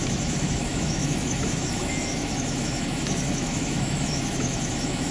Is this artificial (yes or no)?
yes